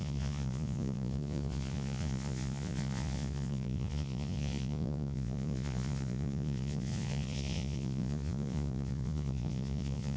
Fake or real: fake